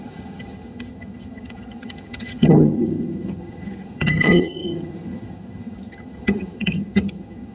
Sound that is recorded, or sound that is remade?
remade